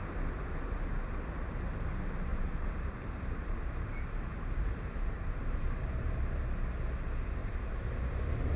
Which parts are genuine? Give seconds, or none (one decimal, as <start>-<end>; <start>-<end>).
0.0-2.3; 6.7-7.4; 7.9-8.6